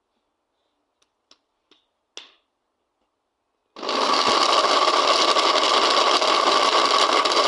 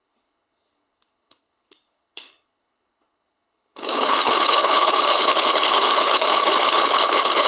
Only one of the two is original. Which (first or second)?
first